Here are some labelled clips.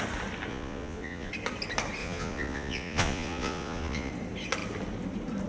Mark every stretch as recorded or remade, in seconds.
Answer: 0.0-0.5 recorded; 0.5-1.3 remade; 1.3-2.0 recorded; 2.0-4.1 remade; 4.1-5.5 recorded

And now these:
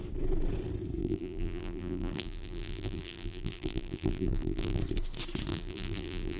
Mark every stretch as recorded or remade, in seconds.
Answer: 0.0-1.0 recorded; 1.0-4.8 remade; 4.8-5.5 recorded; 5.5-6.4 remade

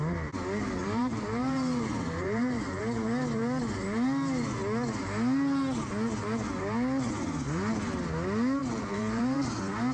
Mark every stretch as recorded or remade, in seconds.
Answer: 0.0-0.8 recorded; 0.8-2.8 remade; 2.8-8.6 recorded; 8.6-9.5 remade; 9.5-9.9 recorded

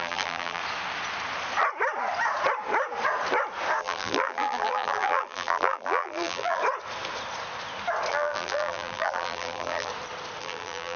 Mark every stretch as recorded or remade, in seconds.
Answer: 0.0-0.6 remade; 0.6-3.8 recorded; 3.8-6.6 remade; 6.6-8.1 recorded; 8.1-9.9 remade; 9.9-10.4 recorded; 10.4-11.0 remade

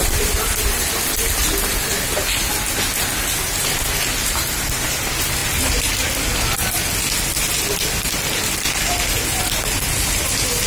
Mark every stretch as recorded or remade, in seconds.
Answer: 0.0-10.7 recorded